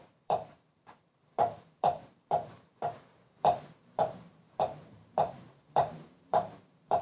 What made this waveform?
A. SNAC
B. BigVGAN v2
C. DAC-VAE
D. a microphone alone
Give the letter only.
B